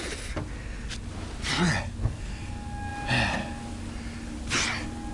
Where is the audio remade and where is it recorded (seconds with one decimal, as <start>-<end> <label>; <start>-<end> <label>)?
0.0-2.0 recorded; 2.0-2.5 remade; 2.5-5.1 recorded